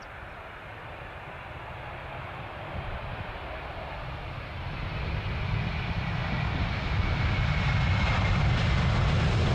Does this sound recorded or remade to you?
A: remade